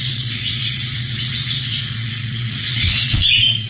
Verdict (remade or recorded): remade